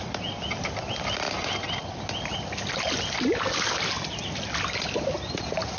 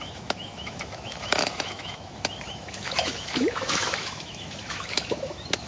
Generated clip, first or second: second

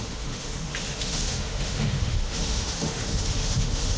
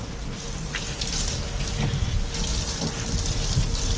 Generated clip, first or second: first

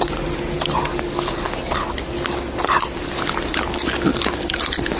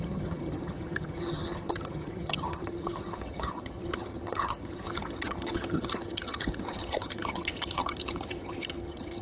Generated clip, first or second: second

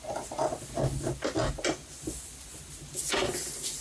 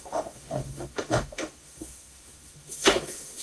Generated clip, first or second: second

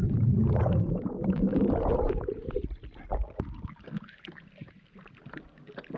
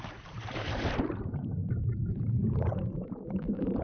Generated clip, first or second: second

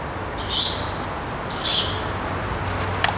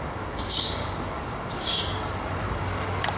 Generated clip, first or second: second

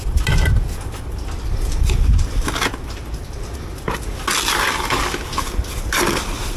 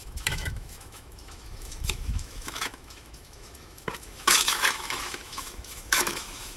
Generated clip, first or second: second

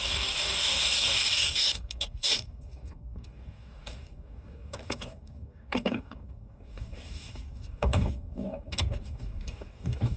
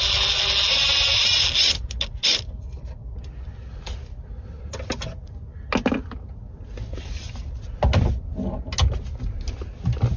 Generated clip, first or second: first